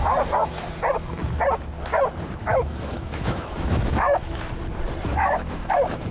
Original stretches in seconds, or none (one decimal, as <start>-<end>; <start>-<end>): 0.0-2.4; 4.4-5.1